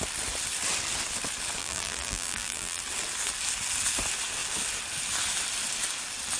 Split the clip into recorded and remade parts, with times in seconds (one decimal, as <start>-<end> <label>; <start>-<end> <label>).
0.0-1.6 recorded; 1.6-2.8 remade; 2.8-6.4 recorded